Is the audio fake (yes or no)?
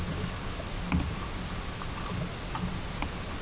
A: no